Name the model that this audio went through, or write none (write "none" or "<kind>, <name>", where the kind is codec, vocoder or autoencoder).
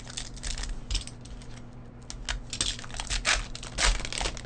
none